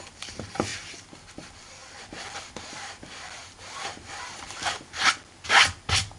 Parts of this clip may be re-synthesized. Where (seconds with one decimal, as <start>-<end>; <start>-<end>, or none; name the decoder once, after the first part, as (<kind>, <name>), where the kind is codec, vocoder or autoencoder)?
none